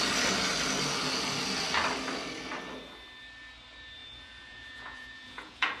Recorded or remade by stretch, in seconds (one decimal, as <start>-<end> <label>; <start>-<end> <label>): 0.0-4.0 recorded; 4.0-5.8 remade